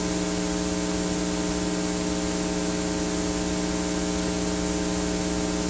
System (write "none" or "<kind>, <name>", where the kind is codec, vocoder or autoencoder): none